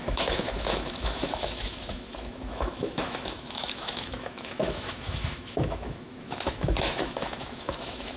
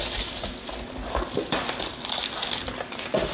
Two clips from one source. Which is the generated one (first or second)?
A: first